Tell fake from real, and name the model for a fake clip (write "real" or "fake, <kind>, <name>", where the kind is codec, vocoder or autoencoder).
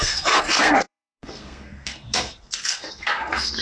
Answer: fake, codec, SNAC